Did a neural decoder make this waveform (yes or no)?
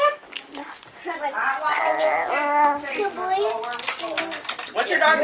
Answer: no